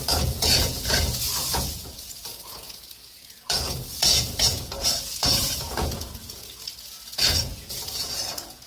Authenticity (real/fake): fake